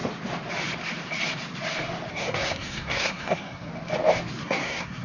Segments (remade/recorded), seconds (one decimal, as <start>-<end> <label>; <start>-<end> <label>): 0.0-2.1 recorded; 2.1-3.7 remade; 3.7-4.4 recorded; 4.4-5.0 remade